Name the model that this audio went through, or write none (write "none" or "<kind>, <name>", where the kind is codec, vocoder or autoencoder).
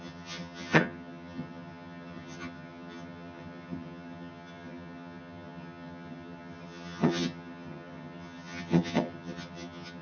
vocoder, HiFi-GAN